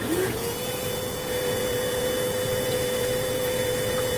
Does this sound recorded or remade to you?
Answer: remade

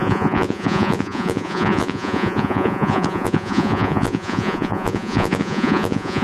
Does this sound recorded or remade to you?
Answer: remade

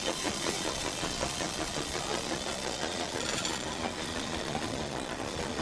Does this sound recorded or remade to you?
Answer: remade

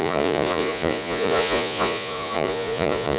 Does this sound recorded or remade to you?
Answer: remade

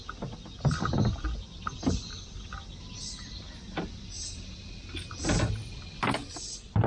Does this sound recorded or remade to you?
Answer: recorded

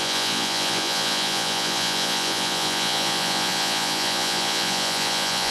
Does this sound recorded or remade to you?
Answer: remade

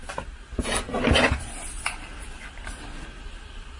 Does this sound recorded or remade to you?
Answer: recorded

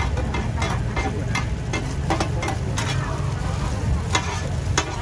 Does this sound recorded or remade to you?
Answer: recorded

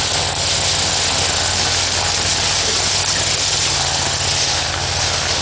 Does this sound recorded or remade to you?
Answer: recorded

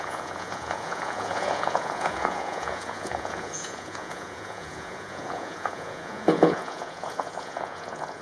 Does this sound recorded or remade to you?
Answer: remade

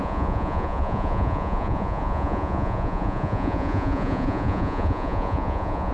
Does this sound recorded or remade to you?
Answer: remade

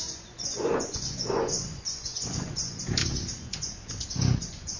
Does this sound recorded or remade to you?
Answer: remade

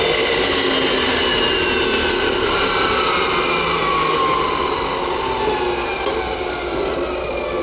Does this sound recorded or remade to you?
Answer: recorded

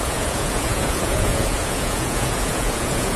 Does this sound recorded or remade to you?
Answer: remade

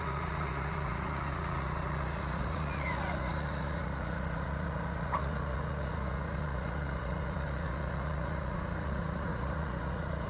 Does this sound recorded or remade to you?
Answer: remade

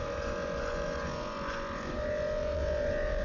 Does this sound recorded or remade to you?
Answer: remade